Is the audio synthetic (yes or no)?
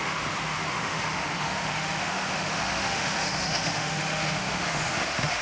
yes